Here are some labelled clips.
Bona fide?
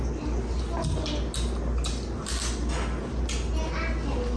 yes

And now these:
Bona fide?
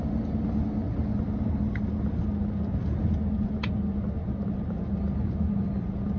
yes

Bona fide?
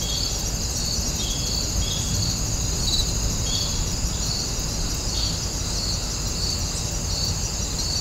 yes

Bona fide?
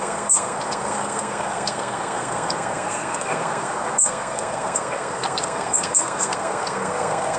no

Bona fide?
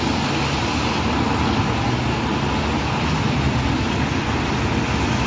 yes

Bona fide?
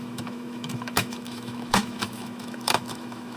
no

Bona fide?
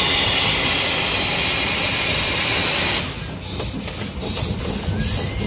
yes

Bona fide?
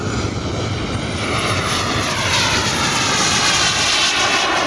yes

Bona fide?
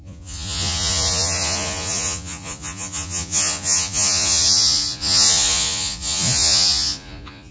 no